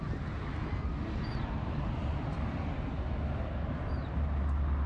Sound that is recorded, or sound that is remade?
recorded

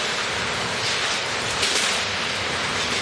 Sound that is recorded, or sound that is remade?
recorded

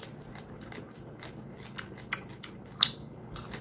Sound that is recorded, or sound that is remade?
recorded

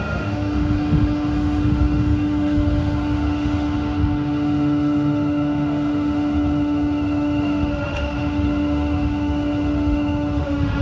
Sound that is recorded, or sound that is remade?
remade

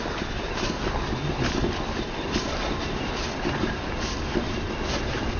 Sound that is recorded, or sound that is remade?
recorded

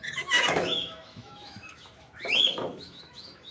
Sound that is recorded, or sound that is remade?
remade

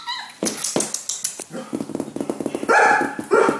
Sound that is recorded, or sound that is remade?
recorded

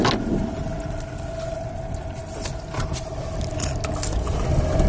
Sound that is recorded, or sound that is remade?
recorded